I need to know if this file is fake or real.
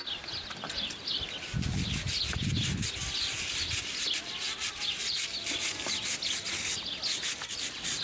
real